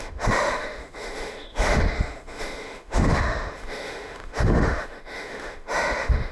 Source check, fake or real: fake